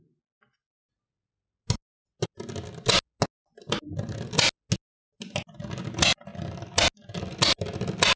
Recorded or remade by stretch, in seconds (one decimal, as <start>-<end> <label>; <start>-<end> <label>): 0.0-8.2 recorded

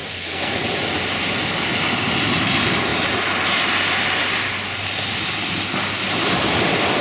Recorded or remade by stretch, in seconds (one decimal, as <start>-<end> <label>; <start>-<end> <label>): 0.0-0.6 remade; 0.6-7.0 recorded

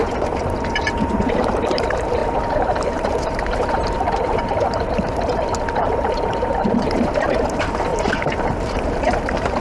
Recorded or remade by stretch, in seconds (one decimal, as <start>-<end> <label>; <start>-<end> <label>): 0.0-2.2 remade; 2.2-2.8 recorded; 2.8-9.6 remade